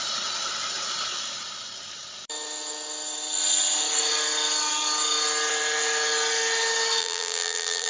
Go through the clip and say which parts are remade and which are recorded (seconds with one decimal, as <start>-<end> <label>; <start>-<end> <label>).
0.0-7.0 recorded; 7.0-7.9 remade